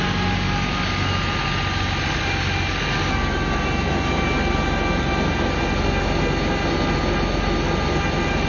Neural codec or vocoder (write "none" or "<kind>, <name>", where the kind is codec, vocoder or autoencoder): none